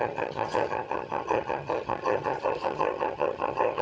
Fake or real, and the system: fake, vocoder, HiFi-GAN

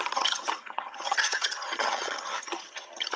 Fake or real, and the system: fake, vocoder, HiFi-GAN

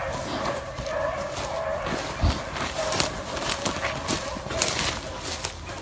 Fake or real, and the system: real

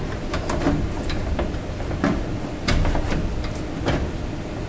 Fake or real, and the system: real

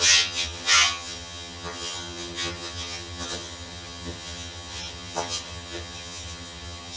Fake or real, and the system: fake, vocoder, HiFi-GAN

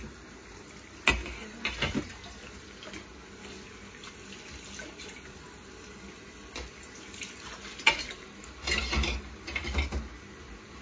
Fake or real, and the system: real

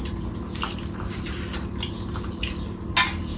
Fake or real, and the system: real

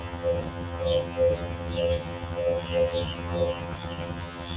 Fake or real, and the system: fake, vocoder, HiFi-GAN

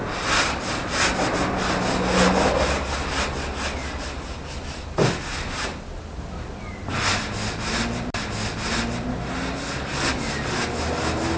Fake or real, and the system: real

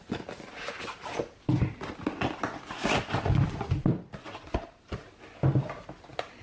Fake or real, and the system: real